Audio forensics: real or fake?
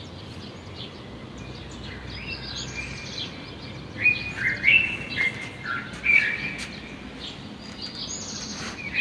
real